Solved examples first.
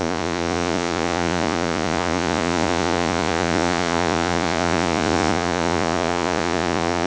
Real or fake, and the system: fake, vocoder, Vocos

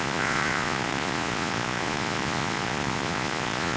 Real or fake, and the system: fake, vocoder, Vocos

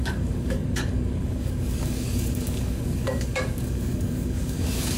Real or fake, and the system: fake, codec, DAC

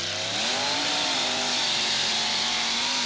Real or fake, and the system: fake, vocoder, BigVGAN v2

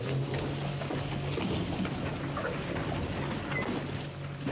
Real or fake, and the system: real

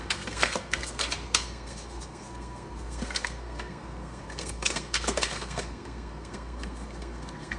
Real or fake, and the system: fake, codec, SNAC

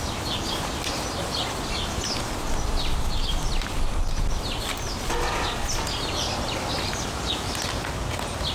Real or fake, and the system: real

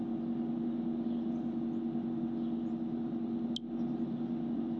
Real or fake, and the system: real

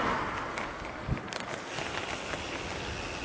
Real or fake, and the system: real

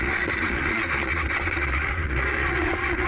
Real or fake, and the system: fake, vocoder, Vocos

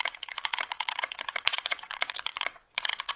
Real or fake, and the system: fake, vocoder, WaveNeXt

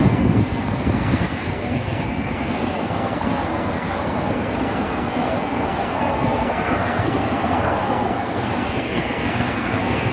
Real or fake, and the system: fake, codec, SNAC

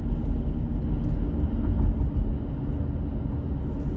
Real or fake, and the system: real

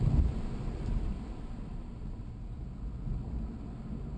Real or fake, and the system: real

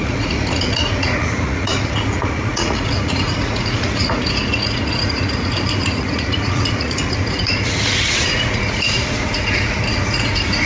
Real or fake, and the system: fake, vocoder, Vocos